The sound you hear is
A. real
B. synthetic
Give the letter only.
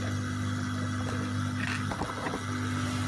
A